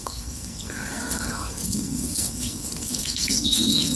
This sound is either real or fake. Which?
fake